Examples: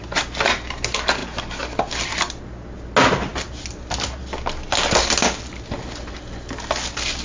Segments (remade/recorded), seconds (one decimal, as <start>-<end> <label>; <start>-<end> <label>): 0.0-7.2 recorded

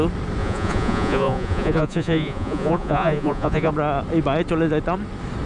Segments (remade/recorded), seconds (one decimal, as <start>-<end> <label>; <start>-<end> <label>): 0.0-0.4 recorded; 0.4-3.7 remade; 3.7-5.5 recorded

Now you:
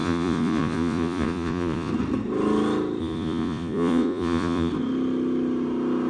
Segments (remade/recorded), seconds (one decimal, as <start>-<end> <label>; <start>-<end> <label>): 0.0-1.9 remade; 1.9-3.0 recorded; 3.0-4.7 remade; 4.7-6.1 recorded

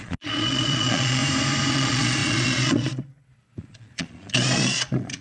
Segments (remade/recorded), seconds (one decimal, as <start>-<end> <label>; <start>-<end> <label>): 0.0-1.2 remade; 1.2-1.7 recorded; 1.7-5.2 remade

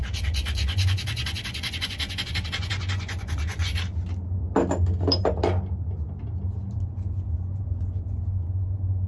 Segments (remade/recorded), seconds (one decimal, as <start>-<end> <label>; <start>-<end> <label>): 0.0-3.7 remade; 3.7-6.8 recorded; 6.8-9.1 remade